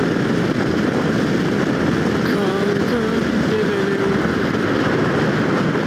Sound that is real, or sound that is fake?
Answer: real